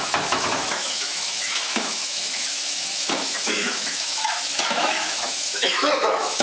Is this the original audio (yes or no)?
no